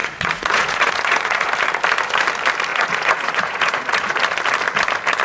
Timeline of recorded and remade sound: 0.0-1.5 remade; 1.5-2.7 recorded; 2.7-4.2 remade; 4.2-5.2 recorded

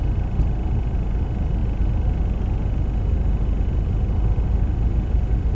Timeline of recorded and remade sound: 0.0-5.5 recorded

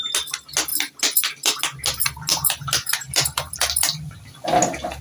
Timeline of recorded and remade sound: 0.0-0.7 recorded; 0.7-1.6 remade; 1.6-2.3 recorded; 2.3-4.1 remade; 4.1-5.0 recorded

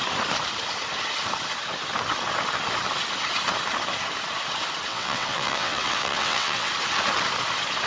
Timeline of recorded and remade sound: 0.0-4.9 recorded; 4.9-6.7 remade; 6.7-7.9 recorded

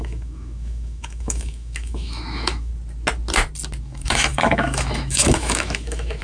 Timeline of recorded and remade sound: 0.0-2.7 remade; 2.7-3.8 recorded; 3.8-6.2 remade